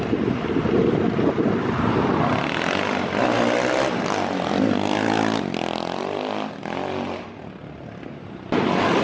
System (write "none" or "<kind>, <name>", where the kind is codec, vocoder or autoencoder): none